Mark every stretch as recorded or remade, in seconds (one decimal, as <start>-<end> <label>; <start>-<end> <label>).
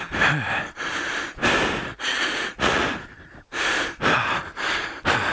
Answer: 0.0-1.9 recorded; 1.9-2.8 remade; 2.8-5.3 recorded